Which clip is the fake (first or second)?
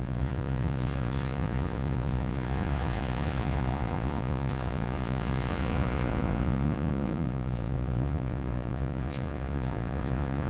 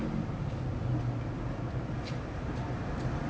first